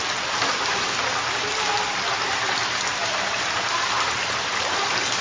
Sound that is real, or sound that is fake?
real